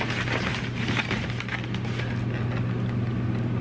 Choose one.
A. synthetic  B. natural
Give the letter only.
B